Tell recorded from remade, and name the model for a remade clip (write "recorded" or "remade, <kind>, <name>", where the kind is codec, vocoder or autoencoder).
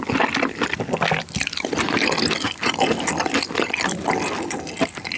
recorded